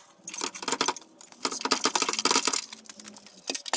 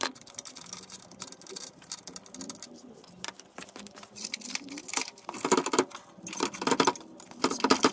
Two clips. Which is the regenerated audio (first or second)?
second